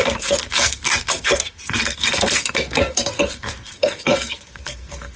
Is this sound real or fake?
fake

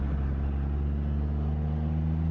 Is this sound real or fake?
real